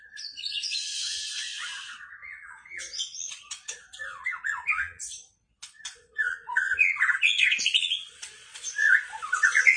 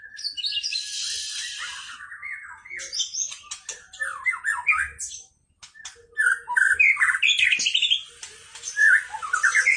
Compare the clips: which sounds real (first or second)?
second